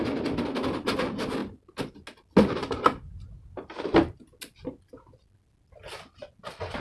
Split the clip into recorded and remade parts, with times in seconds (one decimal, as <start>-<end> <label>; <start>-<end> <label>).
0.0-6.8 recorded